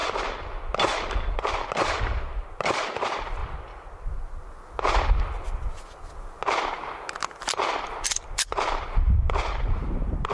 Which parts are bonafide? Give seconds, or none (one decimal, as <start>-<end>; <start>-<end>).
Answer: 0.0-2.0; 3.4-7.9